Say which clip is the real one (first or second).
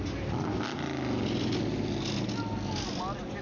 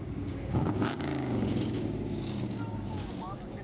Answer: first